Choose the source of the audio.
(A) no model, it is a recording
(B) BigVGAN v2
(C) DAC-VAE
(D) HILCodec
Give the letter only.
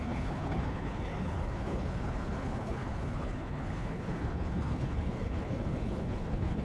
D